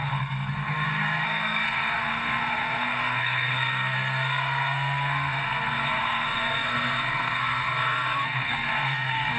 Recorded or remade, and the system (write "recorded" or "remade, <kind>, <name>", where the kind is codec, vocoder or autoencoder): remade, codec, SNAC